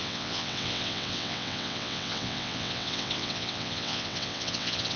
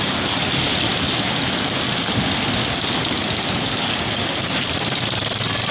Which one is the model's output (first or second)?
first